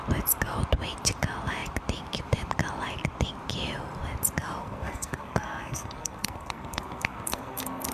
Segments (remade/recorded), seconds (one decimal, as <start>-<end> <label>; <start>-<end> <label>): 0.0-4.6 recorded; 4.6-7.9 remade